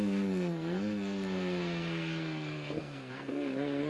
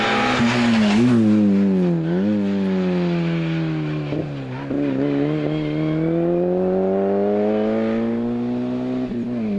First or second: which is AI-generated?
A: first